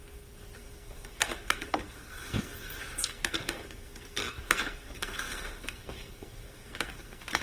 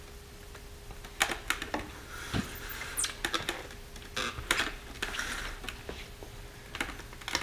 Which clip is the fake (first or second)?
first